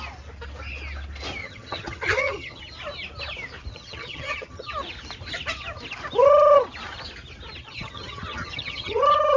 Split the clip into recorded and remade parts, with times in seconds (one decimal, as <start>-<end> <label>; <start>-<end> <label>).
0.0-1.4 recorded; 1.4-2.6 remade; 2.6-3.7 recorded; 3.7-4.7 remade; 4.7-7.6 recorded; 7.6-9.0 remade; 9.0-9.4 recorded